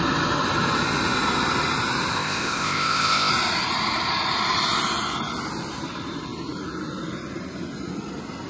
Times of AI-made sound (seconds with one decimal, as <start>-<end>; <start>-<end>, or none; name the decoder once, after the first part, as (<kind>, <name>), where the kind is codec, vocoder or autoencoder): 2.1-3.3 (codec, ZipCodec)